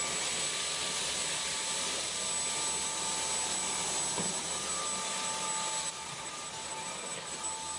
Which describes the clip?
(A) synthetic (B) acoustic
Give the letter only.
B